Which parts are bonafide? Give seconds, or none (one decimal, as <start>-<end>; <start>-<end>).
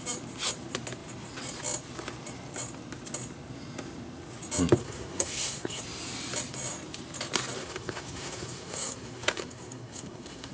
0.0-4.8; 5.8-7.6